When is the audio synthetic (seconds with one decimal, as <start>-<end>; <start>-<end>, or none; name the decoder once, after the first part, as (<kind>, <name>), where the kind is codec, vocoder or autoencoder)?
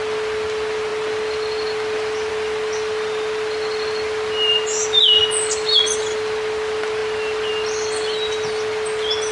none